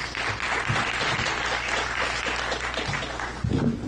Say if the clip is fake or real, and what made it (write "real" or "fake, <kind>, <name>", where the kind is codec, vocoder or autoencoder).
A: real